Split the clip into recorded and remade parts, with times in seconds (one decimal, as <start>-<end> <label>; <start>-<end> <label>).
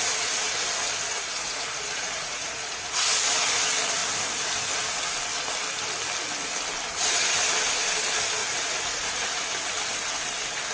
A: 0.0-1.1 recorded; 1.1-3.0 remade; 3.0-8.4 recorded; 8.4-9.5 remade; 9.5-10.7 recorded